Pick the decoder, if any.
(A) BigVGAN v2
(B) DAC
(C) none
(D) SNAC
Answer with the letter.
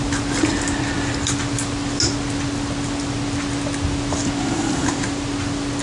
C